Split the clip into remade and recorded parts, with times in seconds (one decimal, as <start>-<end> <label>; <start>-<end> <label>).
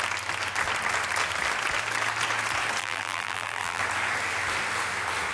0.0-2.8 recorded; 2.8-3.8 remade; 3.8-5.3 recorded